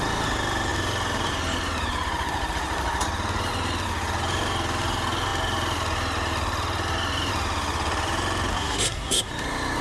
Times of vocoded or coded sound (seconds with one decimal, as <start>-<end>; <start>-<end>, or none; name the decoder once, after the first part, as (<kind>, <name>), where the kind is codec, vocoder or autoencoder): 8.5-9.3 (codec, SNAC)